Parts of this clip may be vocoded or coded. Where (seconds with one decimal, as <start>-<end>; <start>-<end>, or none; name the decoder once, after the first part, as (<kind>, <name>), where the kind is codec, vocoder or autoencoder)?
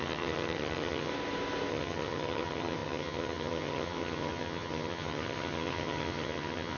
0.0-1.1 (vocoder, HiFi-GAN); 1.7-6.8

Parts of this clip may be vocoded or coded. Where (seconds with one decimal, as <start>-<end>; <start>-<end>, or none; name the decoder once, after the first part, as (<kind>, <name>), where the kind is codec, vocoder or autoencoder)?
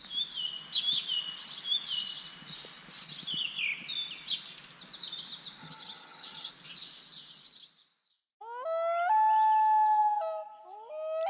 5.6-6.5 (vocoder, HiFi-GAN)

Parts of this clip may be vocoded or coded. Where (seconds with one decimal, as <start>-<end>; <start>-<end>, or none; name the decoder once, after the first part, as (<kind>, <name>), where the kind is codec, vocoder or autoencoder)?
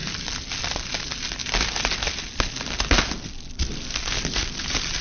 none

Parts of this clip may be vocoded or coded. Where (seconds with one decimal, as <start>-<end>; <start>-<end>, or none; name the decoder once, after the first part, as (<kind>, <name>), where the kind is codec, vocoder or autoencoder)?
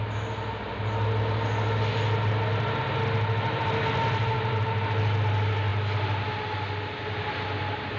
none